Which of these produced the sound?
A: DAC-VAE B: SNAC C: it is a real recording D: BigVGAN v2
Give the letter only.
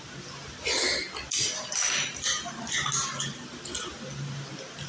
C